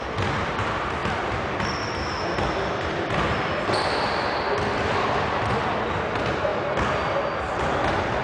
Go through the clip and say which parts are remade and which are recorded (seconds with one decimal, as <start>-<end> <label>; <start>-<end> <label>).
0.0-8.2 recorded